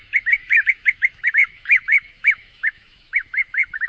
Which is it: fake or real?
fake